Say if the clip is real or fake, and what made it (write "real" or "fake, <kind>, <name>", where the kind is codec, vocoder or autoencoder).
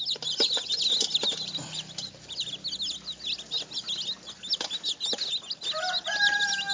real